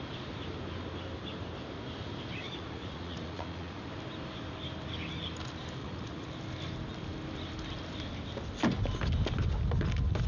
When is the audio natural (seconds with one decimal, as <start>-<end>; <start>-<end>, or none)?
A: 0.0-2.4; 3.8-5.8; 6.3-10.3